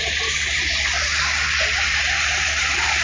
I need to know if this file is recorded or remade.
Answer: recorded